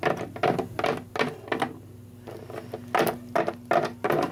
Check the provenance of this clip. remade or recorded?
recorded